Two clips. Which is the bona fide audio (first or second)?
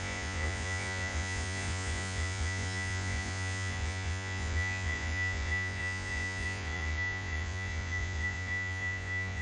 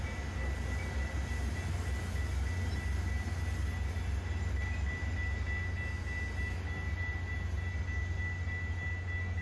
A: second